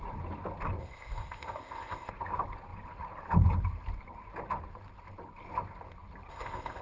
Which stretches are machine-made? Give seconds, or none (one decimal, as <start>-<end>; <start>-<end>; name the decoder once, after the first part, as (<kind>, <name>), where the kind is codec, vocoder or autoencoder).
0.8-2.1 (codec, ZipCodec); 6.3-6.8